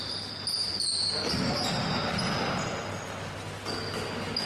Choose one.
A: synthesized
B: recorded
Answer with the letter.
B